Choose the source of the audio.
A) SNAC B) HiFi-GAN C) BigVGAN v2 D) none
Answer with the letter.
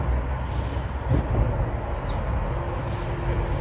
D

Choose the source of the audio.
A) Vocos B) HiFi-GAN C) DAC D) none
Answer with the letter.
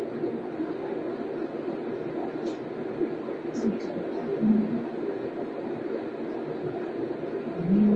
D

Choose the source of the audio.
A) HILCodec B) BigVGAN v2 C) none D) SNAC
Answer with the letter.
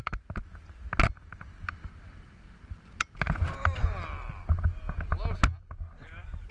C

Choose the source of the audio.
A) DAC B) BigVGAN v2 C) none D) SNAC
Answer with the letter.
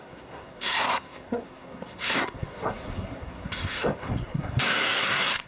D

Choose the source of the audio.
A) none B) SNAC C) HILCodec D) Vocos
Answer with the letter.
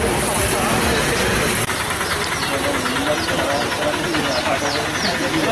A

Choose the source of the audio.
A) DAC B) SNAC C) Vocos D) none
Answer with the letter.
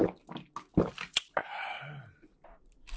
D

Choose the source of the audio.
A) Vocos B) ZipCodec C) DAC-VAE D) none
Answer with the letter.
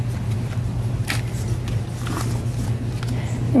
D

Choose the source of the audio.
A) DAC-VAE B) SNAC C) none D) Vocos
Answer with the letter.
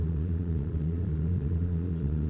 D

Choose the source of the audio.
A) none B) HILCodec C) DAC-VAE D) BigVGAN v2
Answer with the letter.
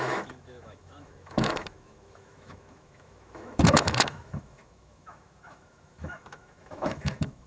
C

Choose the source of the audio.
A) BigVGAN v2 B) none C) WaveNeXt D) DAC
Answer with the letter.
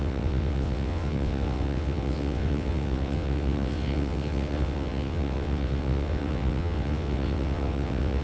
C